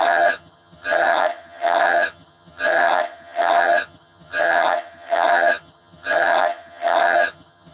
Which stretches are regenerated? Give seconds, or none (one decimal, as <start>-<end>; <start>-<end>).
0.0-7.7